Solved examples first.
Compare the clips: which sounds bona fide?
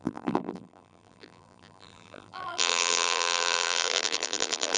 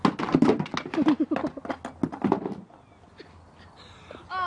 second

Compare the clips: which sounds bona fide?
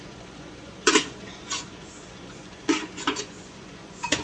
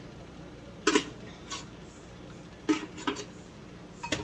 second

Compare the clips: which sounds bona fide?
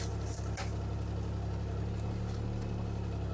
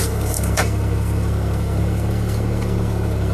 first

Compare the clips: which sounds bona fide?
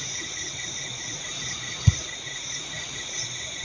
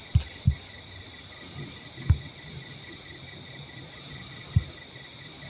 second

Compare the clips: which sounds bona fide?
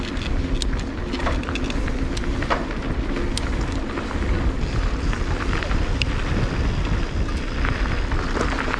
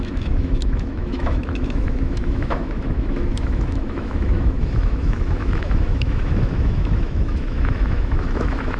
first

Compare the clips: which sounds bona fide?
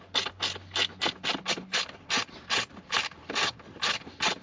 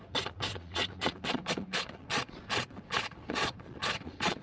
first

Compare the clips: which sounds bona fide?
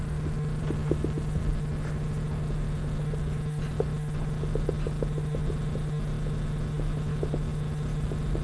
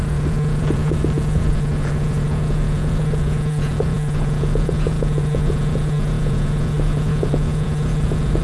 first